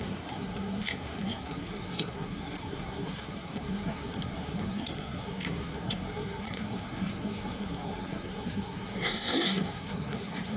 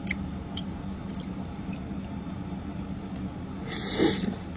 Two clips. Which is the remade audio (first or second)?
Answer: first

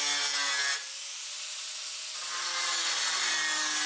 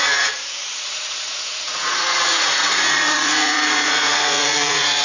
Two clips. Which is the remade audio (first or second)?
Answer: second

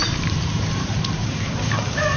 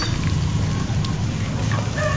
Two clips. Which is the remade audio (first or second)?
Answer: first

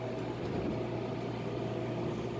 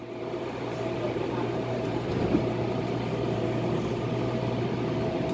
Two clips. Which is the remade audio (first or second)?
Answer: second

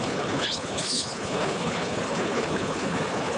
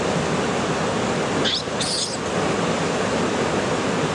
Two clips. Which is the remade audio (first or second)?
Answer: first